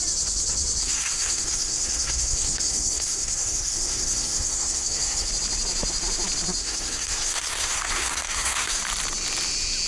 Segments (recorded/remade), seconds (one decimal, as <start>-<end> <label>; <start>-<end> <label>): 0.0-0.8 recorded; 0.8-5.3 remade; 5.3-6.6 recorded; 6.6-8.8 remade; 8.8-9.9 recorded